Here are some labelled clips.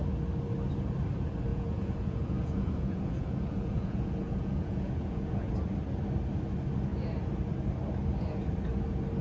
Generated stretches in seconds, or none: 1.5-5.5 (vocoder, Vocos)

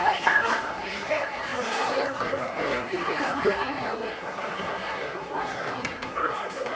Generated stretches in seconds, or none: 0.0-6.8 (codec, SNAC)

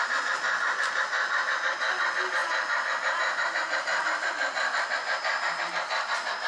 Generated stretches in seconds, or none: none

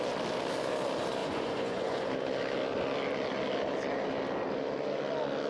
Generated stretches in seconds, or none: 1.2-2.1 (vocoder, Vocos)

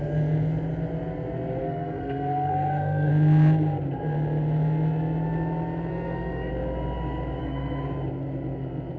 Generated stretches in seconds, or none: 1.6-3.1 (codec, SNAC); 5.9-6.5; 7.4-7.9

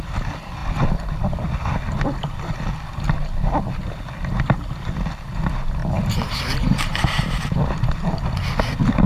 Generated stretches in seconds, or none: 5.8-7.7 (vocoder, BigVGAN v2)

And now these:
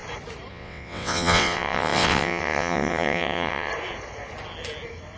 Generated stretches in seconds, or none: 0.5-3.7 (vocoder, WaveNeXt)